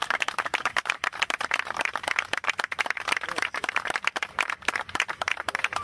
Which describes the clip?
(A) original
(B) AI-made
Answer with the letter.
B